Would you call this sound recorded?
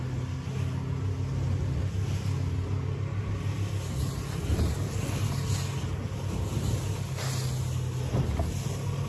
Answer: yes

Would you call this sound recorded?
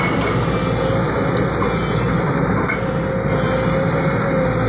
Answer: yes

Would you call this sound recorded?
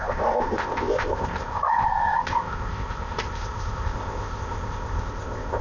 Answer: no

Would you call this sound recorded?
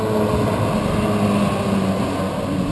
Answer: yes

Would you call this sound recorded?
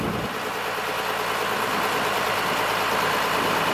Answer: yes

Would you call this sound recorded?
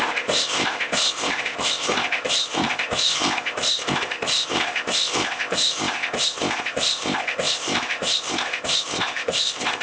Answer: no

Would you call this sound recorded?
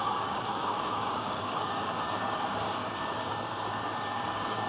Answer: no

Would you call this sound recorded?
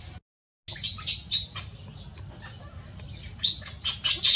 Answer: yes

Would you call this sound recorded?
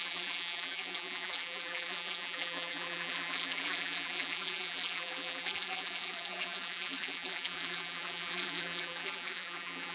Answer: no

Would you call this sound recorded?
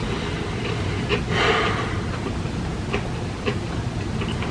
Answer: yes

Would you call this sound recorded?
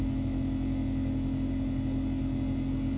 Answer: yes